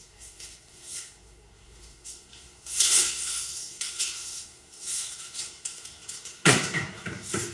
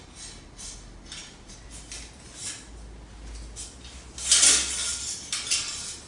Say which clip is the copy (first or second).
first